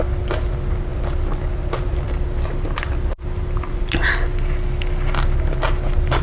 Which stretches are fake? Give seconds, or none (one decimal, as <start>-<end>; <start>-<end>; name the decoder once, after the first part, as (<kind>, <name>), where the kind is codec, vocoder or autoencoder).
none